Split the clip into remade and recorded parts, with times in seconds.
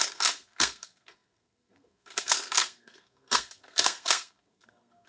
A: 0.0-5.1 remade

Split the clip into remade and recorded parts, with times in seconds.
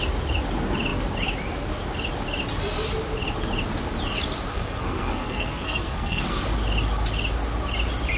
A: 0.0-4.5 recorded; 4.5-6.4 remade; 6.4-8.2 recorded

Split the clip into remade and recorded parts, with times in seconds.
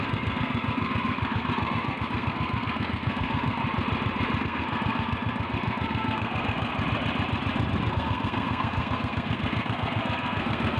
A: 0.0-3.6 remade; 3.6-4.4 recorded; 4.4-6.7 remade; 6.7-7.9 recorded; 7.9-10.8 remade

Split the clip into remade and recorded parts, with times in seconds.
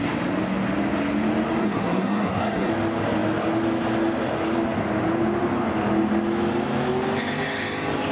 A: 0.0-1.6 recorded; 1.6-2.7 remade; 2.7-8.1 recorded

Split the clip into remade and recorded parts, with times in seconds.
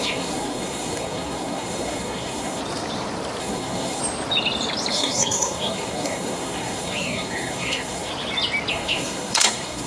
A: 0.0-2.6 remade; 2.6-3.4 recorded; 3.4-4.0 remade; 4.0-4.9 recorded; 4.9-8.1 remade; 8.1-8.7 recorded; 8.7-9.9 remade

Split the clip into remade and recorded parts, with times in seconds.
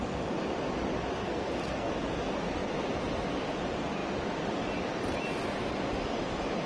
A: 0.0-1.2 recorded; 1.2-1.9 remade; 1.9-6.7 recorded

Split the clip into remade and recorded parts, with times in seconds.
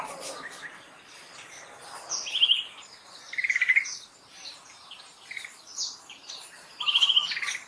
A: 0.0-7.7 recorded